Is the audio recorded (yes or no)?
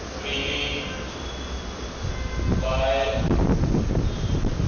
yes